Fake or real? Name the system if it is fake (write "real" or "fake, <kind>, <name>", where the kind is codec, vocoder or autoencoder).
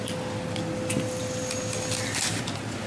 real